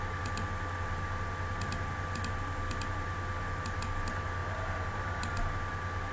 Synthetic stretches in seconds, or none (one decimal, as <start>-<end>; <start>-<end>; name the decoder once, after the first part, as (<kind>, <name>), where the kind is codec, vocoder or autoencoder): 4.4-5.2 (vocoder, BigVGAN v2)